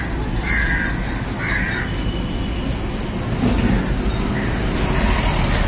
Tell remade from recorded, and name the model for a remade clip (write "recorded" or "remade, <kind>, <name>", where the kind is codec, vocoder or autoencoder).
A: recorded